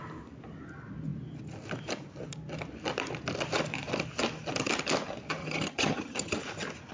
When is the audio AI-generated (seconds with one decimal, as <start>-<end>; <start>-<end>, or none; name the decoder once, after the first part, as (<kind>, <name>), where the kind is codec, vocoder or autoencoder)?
5.4-6.4 (vocoder, HiFi-GAN)